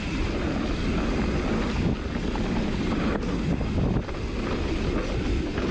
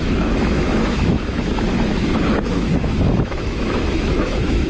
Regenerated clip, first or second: second